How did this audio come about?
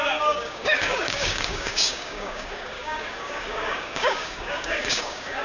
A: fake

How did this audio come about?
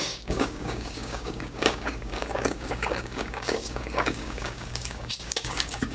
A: fake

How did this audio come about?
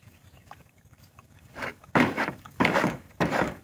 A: fake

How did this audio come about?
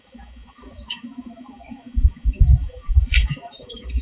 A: fake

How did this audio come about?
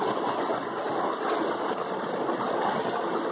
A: real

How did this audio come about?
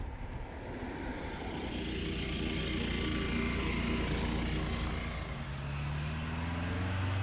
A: real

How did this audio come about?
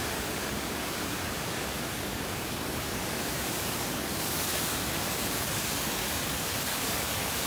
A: fake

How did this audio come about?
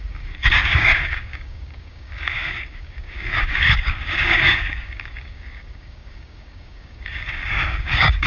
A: fake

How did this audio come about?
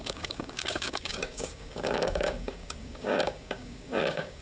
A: fake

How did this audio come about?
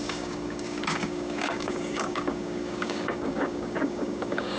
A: fake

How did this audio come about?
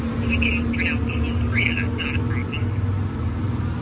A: real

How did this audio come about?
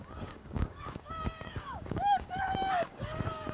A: fake